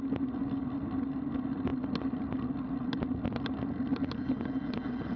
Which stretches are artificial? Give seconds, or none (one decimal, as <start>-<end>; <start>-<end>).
none